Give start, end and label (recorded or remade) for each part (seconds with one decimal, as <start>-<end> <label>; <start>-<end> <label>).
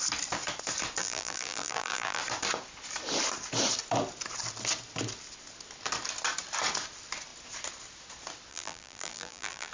0.0-1.0 recorded; 1.0-2.2 remade; 2.2-8.5 recorded; 8.5-9.7 remade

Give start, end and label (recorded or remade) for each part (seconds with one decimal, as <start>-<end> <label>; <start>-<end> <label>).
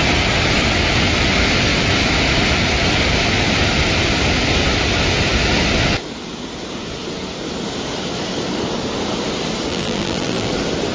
0.0-9.7 recorded; 9.7-10.5 remade; 10.5-10.9 recorded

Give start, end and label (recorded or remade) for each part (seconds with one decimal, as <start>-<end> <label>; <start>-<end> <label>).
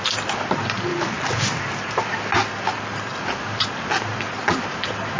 0.0-0.9 recorded; 0.9-2.0 remade; 2.0-5.2 recorded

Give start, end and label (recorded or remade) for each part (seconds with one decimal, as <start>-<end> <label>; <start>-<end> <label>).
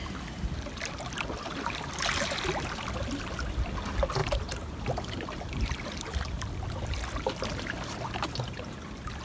0.0-4.2 recorded; 4.2-6.2 remade; 6.2-9.2 recorded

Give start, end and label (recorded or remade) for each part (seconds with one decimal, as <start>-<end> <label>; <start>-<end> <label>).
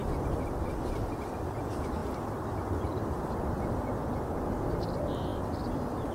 0.0-0.9 recorded; 0.9-2.0 remade; 2.0-4.8 recorded; 4.8-6.1 remade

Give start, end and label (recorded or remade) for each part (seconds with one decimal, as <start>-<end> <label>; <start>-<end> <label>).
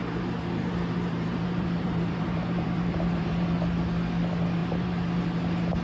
0.0-3.5 remade; 3.5-4.6 recorded; 4.6-5.2 remade; 5.2-5.8 recorded